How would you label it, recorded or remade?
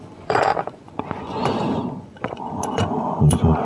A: remade